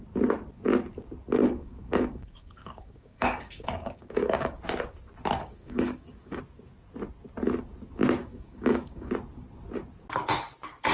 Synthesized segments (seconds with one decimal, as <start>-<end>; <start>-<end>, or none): 1.4-4.6; 5.4-6.4; 8.2-9.1